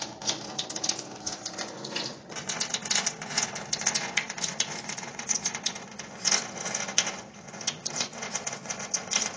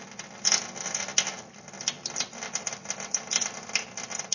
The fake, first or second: first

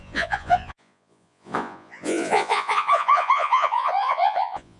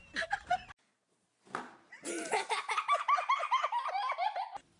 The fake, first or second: first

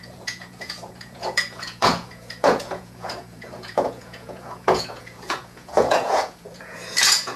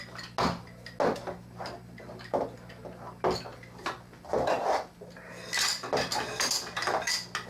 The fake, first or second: first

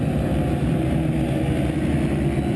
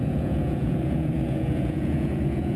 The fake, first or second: second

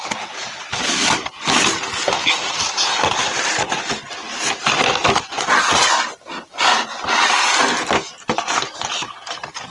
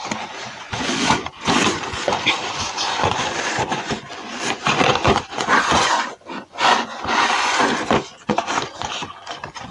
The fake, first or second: second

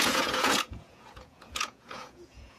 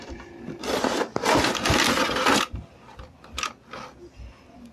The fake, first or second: first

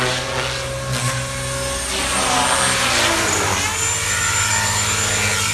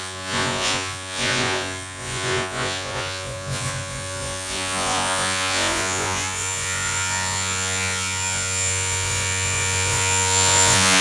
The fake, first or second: second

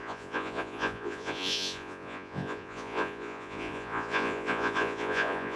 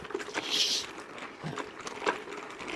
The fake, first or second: first